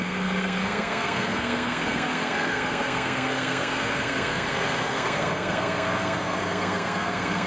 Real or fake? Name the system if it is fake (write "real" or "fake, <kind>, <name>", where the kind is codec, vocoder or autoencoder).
fake, codec, SNAC